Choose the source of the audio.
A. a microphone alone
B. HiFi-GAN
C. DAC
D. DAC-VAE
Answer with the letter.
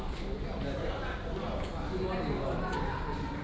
A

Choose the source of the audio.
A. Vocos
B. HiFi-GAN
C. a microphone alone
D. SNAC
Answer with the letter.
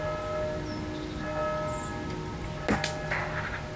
C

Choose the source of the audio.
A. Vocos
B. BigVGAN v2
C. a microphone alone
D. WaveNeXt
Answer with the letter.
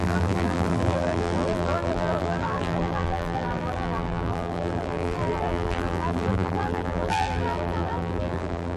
B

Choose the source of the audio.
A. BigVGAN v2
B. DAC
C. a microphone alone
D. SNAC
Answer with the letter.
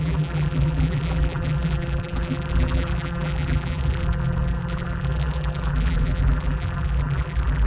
A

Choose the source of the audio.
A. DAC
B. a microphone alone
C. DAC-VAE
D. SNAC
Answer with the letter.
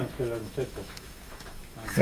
C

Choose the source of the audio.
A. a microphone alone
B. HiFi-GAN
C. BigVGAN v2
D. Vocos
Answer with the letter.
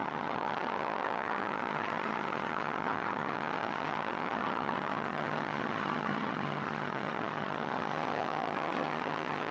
B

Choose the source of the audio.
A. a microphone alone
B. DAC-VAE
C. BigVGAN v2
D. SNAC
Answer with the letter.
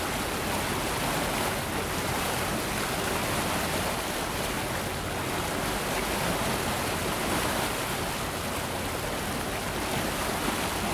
A